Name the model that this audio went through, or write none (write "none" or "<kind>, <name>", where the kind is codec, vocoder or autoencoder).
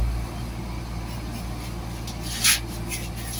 none